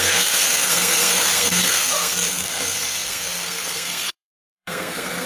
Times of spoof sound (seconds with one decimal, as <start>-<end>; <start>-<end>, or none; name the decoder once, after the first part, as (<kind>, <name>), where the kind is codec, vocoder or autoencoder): 0.0-5.3 (codec, SNAC)